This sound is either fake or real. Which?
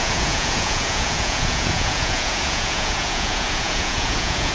fake